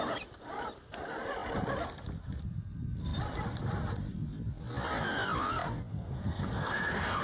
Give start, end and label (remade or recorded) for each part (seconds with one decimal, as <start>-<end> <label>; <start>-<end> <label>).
0.0-5.9 recorded; 5.9-7.2 remade

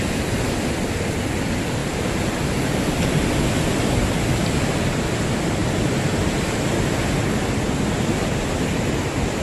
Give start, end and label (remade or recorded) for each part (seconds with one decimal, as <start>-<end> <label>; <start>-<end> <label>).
0.0-1.8 recorded; 1.8-3.4 remade; 3.4-9.4 recorded

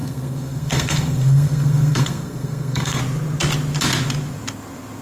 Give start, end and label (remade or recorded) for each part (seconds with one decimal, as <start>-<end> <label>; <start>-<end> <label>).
0.0-3.0 remade; 3.0-5.0 recorded